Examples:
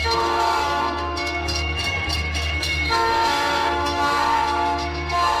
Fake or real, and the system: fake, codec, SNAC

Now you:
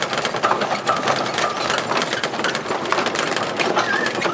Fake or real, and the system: real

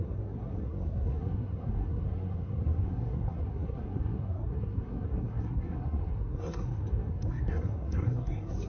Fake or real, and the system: fake, codec, SNAC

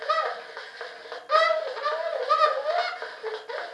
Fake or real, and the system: real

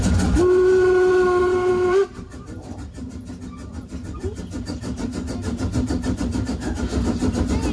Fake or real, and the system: real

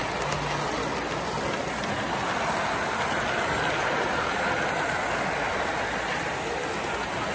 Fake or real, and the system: real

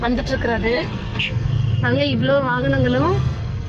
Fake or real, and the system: fake, codec, SNAC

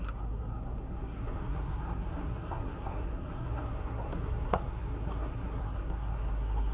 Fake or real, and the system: fake, codec, SNAC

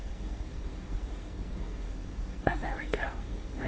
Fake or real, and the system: fake, codec, SNAC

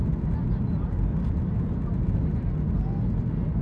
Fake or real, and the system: real